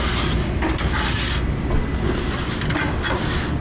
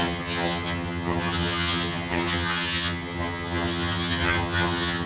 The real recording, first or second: first